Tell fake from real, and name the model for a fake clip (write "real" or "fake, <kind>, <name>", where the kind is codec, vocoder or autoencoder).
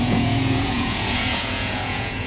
fake, vocoder, Vocos